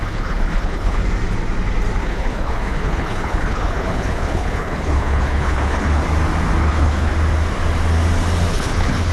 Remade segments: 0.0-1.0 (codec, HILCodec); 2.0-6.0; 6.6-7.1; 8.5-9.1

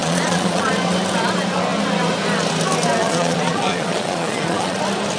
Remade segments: 0.0-0.7 (vocoder, Vocos); 3.0-4.8

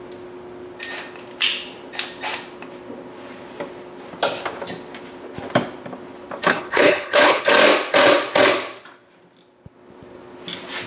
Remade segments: 6.5-7.4 (codec, HILCodec)

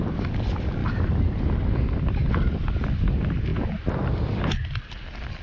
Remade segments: none

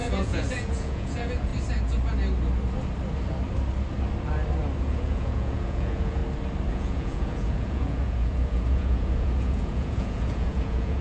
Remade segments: 0.0-1.5 (vocoder, Vocos); 4.8-6.2; 6.7-11.0

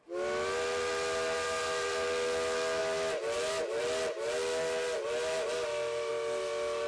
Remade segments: none

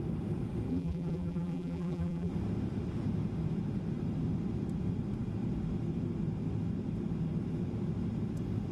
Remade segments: 0.7-2.3 (vocoder, BigVGAN v2)